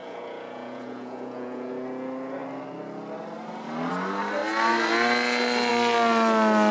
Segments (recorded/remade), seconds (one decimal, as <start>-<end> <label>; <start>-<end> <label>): 0.0-1.7 remade; 1.7-6.7 recorded

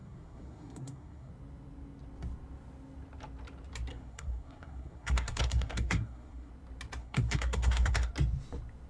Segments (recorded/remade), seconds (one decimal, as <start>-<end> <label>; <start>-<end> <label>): 0.0-1.3 remade; 1.3-3.9 recorded; 3.9-6.5 remade; 6.5-7.0 recorded; 7.0-8.1 remade; 8.1-8.9 recorded

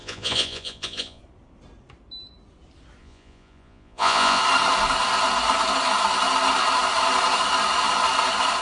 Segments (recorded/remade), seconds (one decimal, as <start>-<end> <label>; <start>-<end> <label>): 0.0-1.2 remade; 1.2-3.0 recorded; 3.0-4.4 remade; 4.4-8.6 recorded

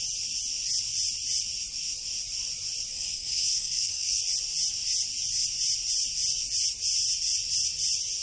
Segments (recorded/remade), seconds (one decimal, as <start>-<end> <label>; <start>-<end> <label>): 0.0-2.9 recorded; 2.9-4.2 remade; 4.2-8.2 recorded

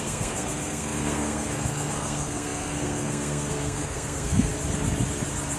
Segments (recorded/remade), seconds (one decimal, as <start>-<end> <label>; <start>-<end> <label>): 0.0-4.5 remade; 4.5-5.6 recorded

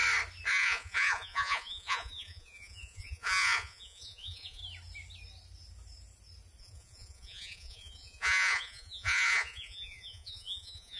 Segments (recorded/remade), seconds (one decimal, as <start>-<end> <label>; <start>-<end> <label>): 0.0-0.5 recorded; 0.5-4.6 remade; 4.6-6.6 recorded; 6.6-11.0 remade

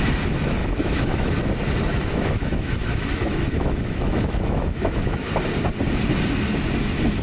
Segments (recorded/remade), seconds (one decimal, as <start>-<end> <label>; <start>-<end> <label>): 0.0-0.6 recorded; 0.6-1.3 remade; 1.3-1.9 recorded; 1.9-5.3 remade; 5.3-7.2 recorded

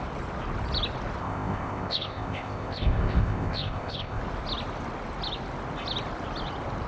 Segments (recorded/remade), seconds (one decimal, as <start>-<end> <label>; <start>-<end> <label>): 0.0-1.2 recorded; 1.2-4.2 remade; 4.2-6.9 recorded